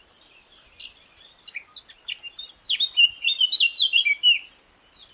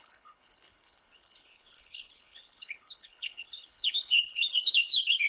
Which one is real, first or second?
first